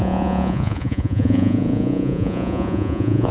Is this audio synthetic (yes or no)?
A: yes